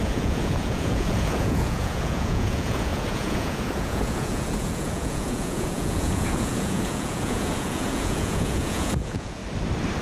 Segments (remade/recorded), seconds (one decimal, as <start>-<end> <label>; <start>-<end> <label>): 0.0-9.4 remade; 9.4-10.0 recorded